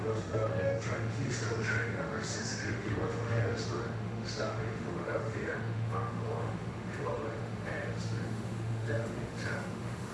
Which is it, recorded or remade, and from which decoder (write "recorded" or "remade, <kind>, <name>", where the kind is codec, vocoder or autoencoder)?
remade, autoencoder, DAC-VAE